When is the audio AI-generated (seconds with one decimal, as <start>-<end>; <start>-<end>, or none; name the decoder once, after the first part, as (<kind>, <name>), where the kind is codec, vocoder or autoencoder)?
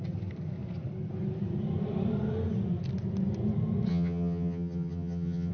3.9-5.5 (vocoder, HiFi-GAN)